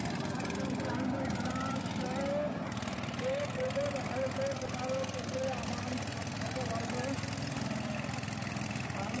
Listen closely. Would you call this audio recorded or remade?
recorded